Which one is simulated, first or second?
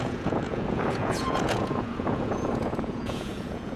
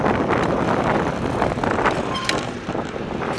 first